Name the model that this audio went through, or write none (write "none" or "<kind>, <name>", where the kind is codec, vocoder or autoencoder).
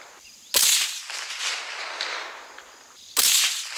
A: none